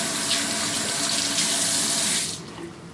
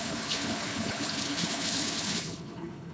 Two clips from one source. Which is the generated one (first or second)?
second